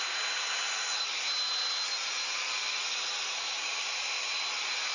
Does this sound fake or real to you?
real